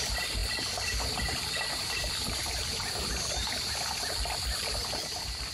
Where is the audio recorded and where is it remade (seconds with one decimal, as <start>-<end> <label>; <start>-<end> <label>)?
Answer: 0.0-5.5 recorded